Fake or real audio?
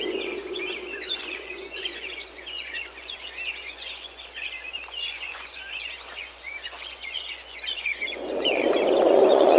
fake